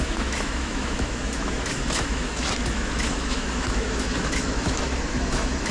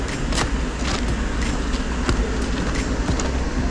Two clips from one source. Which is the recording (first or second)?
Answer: second